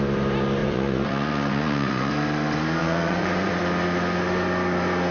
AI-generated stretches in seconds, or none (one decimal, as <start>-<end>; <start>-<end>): 0.6-2.1; 2.8-3.6